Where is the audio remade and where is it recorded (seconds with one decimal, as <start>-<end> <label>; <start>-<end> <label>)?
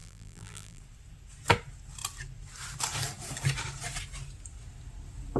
0.0-0.8 remade; 0.8-5.4 recorded